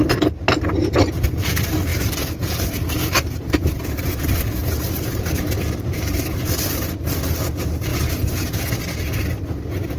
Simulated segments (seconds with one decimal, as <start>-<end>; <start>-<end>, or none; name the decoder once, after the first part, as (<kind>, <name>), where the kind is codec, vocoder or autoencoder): 1.9-6.9 (vocoder, BigVGAN v2)